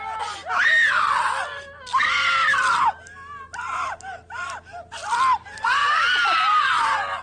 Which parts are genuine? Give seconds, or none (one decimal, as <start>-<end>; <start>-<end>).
0.0-5.8; 6.6-7.2